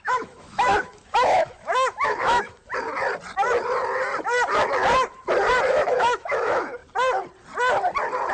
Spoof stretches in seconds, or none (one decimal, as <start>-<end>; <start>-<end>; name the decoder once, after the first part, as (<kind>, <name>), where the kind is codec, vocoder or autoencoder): 0.0-2.6 (autoencoder, DAC-VAE); 5.7-6.8